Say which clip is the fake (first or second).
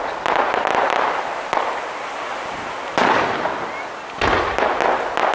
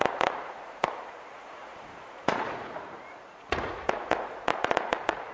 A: second